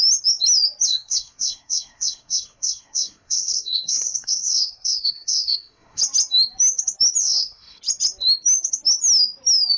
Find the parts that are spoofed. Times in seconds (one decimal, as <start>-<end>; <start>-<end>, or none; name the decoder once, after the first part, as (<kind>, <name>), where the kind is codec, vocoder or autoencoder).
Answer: 0.9-6.0 (codec, SNAC); 7.2-7.8